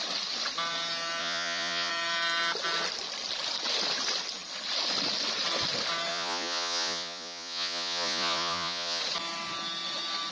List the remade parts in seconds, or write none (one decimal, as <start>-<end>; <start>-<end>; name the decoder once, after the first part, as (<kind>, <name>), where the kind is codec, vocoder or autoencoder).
1.2-1.9 (vocoder, Vocos); 6.1-9.0